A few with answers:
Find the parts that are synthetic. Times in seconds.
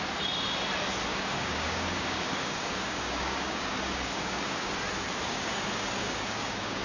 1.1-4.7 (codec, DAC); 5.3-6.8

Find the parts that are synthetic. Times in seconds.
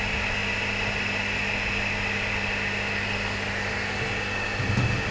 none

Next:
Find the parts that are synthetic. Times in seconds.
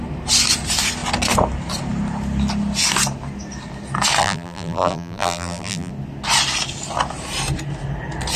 4.2-5.9 (vocoder, BigVGAN v2)